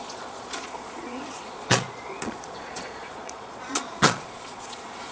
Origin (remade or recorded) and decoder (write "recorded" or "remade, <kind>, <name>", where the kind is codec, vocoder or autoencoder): remade, vocoder, Vocos